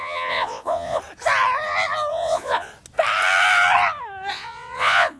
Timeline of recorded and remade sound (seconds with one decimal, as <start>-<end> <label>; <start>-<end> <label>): 0.0-1.0 remade; 1.0-2.1 recorded; 2.1-2.7 remade; 2.7-4.3 recorded; 4.3-5.2 remade